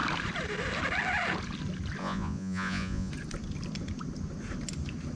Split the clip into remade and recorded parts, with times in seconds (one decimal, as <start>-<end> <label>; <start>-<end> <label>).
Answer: 0.0-2.0 recorded; 2.0-3.1 remade; 3.1-5.2 recorded